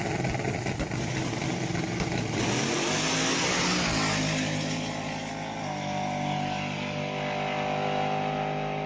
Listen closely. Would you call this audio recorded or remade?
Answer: recorded